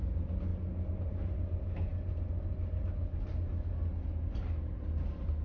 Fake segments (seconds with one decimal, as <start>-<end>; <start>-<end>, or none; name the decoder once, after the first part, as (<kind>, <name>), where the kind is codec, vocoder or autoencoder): none